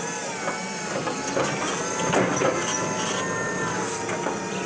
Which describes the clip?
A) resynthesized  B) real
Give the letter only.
B